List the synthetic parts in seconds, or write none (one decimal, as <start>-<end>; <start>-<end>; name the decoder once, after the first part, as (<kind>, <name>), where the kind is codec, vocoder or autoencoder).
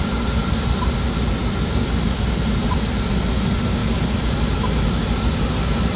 none